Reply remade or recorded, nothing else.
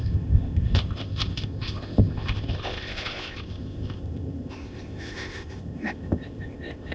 remade